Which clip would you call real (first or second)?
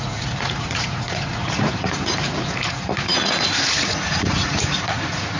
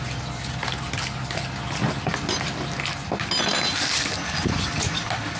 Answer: second